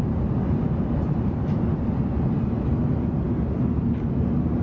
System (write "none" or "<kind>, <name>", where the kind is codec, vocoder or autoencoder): none